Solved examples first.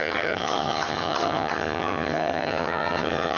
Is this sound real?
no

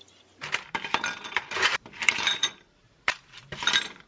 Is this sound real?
no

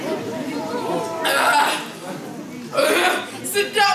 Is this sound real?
yes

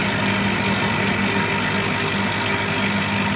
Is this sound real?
yes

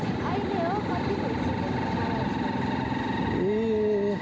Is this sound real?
yes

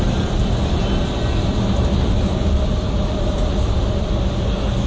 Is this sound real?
yes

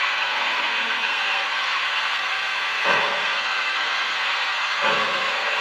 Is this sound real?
no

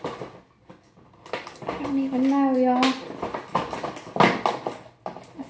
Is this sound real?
yes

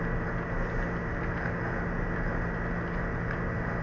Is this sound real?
yes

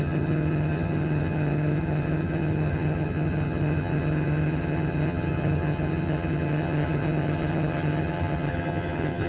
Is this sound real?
no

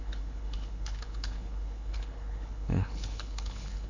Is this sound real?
no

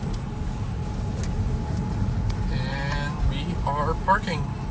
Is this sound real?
yes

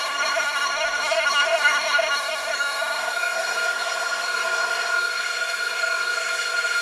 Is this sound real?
no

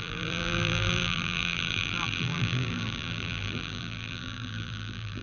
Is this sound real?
no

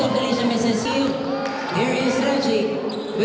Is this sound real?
yes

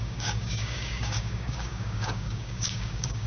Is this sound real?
no